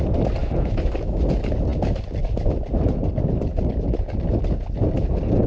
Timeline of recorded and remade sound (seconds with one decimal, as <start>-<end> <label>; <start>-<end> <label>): 0.0-0.4 recorded; 0.4-1.2 remade; 1.2-5.5 recorded